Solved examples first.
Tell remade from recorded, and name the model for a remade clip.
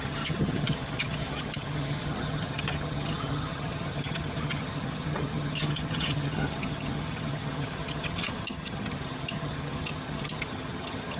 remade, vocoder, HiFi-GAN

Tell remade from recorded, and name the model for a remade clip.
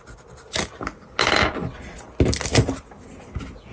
recorded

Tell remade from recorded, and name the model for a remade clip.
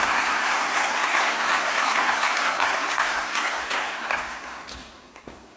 remade, codec, SNAC